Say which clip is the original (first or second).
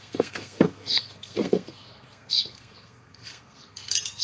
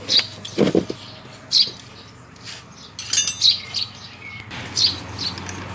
second